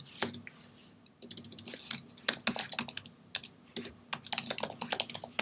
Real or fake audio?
real